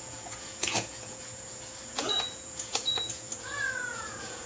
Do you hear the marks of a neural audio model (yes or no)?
yes